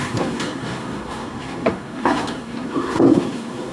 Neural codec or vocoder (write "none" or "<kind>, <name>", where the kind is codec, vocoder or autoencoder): codec, SNAC